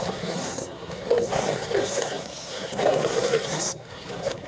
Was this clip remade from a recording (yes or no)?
yes